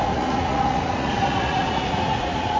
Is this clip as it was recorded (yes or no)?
no